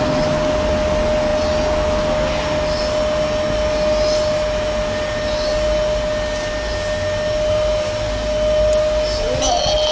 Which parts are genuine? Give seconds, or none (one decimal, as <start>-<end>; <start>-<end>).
0.0-9.9